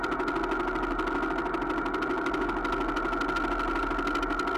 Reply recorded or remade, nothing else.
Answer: recorded